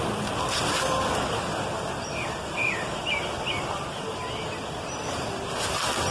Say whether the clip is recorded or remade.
recorded